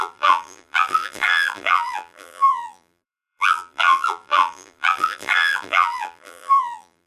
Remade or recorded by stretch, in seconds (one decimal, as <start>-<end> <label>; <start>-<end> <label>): 0.0-7.1 remade